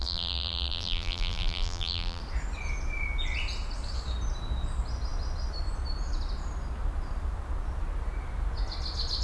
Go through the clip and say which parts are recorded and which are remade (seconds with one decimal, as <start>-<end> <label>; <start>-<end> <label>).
0.0-2.2 remade; 2.2-9.2 recorded